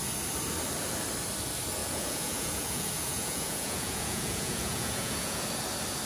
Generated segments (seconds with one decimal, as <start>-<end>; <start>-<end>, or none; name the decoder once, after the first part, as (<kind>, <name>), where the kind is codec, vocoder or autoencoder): 1.8-5.4 (vocoder, Vocos)